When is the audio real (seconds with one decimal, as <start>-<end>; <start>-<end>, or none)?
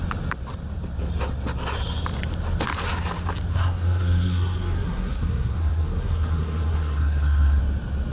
0.0-3.5; 7.6-8.1